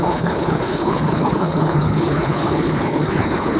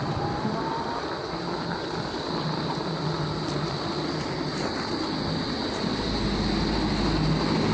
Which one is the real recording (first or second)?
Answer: second